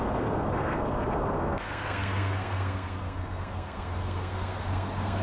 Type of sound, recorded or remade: remade